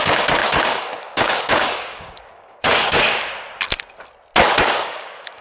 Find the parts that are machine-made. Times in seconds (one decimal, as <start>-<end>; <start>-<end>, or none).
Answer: 0.0-3.3; 4.6-5.4

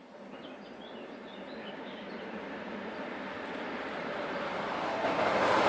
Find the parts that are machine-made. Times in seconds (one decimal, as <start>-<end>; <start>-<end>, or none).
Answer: 1.6-2.1